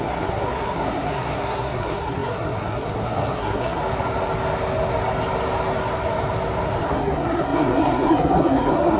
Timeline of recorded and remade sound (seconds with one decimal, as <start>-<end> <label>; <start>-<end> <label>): 0.0-3.8 remade; 3.8-6.8 recorded; 6.8-9.0 remade